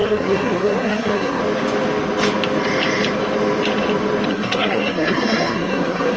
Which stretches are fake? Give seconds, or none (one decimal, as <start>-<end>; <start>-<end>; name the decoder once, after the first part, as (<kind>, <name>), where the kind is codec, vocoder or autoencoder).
0.0-1.4 (codec, SNAC); 4.3-6.2

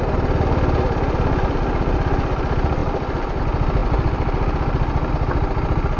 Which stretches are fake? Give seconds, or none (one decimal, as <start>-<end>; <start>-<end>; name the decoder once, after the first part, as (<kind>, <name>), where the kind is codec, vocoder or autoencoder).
none

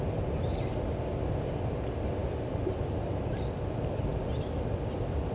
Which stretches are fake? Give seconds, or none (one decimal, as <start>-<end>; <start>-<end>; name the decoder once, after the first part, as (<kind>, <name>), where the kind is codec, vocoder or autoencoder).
none